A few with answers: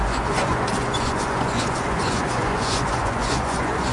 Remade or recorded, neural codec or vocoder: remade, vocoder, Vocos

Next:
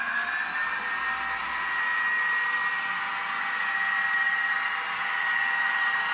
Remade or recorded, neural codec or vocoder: recorded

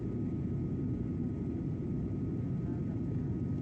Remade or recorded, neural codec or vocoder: recorded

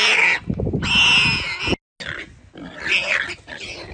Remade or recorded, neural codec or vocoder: recorded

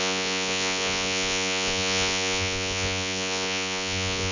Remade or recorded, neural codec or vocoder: remade, vocoder, Vocos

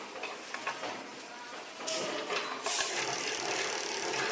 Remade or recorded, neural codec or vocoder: recorded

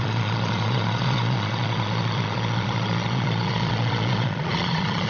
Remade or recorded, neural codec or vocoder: remade, vocoder, Vocos